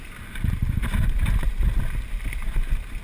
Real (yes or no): yes